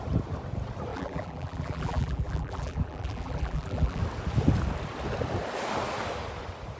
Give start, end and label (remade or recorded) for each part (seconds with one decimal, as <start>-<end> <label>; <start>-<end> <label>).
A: 0.0-0.9 recorded; 0.9-4.0 remade; 4.0-6.8 recorded

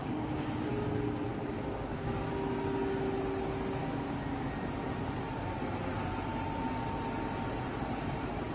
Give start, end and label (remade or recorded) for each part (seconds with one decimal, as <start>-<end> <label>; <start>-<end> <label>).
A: 0.0-0.7 remade; 0.7-1.3 recorded; 1.3-2.3 remade; 2.3-3.8 recorded; 3.8-4.5 remade; 4.5-8.5 recorded

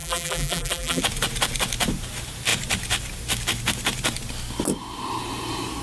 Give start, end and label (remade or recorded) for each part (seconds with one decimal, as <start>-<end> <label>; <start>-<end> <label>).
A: 0.0-1.0 remade; 1.0-5.8 recorded